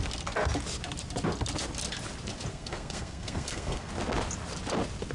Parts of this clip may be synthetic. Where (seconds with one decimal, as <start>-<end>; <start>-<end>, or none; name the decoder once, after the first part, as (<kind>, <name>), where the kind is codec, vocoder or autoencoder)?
2.5-3.9 (codec, SNAC)